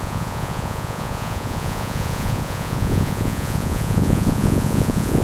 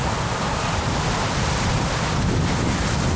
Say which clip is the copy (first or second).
first